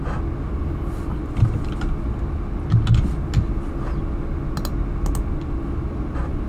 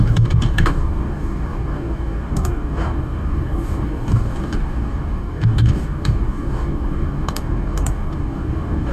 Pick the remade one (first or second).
second